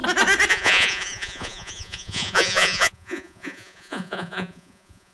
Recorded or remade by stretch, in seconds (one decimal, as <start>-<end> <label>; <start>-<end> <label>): 0.0-0.5 recorded; 0.5-5.1 remade